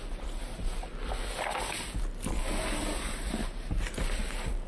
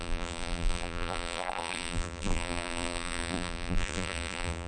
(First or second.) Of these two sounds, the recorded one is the first